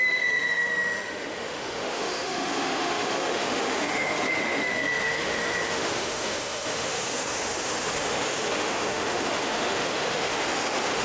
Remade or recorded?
remade